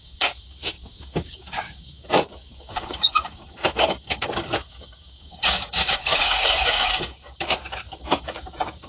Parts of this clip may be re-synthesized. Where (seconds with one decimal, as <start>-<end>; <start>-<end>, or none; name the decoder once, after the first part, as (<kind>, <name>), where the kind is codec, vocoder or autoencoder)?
0.0-8.9 (codec, DAC)